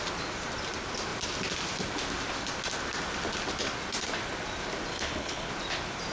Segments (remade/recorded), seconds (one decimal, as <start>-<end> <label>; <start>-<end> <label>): 0.0-4.9 recorded; 4.9-5.5 remade; 5.5-6.1 recorded